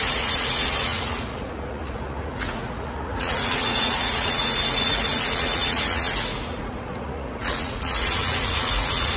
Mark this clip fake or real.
fake